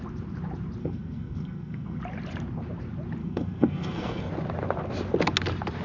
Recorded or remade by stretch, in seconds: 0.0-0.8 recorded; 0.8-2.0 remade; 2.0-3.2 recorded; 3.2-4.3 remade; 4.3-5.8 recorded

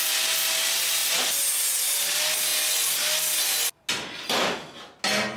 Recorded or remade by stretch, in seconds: 0.0-5.4 recorded

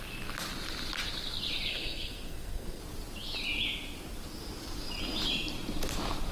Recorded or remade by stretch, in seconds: 0.0-1.7 recorded; 1.7-2.8 remade; 2.8-6.3 recorded

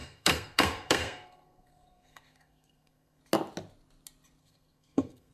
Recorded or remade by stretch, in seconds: 0.0-3.2 remade; 3.2-4.4 recorded; 4.4-5.3 remade